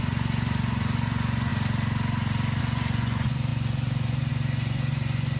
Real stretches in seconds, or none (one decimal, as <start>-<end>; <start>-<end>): 1.5-2.6